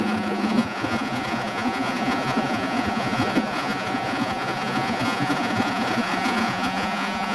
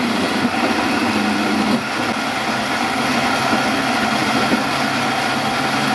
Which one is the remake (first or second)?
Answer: first